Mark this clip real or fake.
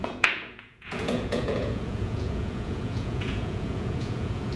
fake